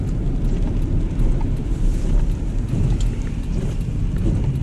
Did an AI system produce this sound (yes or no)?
no